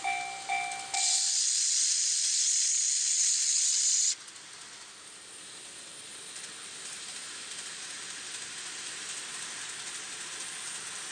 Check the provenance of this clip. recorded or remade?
recorded